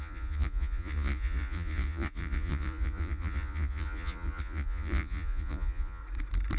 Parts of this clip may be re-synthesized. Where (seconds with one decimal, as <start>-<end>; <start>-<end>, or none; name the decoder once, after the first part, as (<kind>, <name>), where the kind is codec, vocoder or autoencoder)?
0.0-6.0 (vocoder, Vocos)